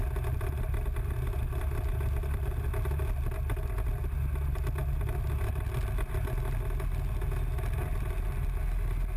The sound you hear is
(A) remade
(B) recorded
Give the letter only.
B